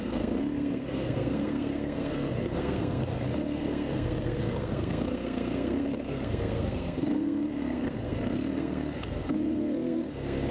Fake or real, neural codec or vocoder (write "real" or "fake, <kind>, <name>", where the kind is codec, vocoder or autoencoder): fake, codec, SNAC